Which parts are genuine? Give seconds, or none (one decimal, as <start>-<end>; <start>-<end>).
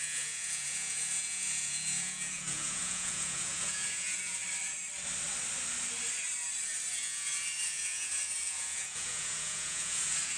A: 4.4-6.9